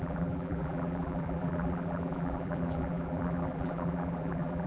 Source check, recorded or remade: remade